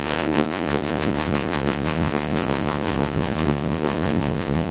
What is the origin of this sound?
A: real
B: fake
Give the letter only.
B